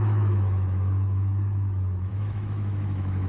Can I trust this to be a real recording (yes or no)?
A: no